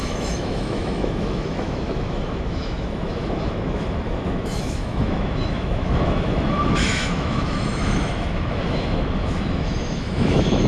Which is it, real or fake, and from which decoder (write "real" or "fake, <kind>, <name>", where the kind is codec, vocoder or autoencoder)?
fake, autoencoder, DAC-VAE